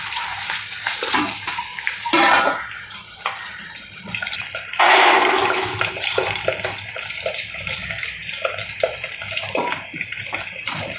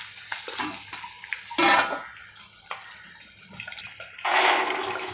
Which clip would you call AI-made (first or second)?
first